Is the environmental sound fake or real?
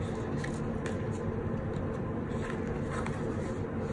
real